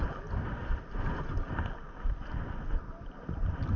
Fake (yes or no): no